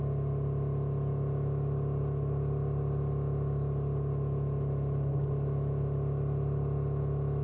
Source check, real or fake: real